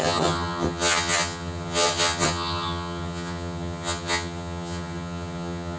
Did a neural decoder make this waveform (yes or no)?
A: yes